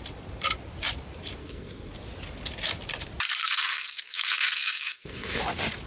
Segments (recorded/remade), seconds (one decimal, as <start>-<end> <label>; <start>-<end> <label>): 0.0-1.4 recorded; 1.4-1.9 remade; 1.9-3.4 recorded; 3.4-5.4 remade; 5.4-5.9 recorded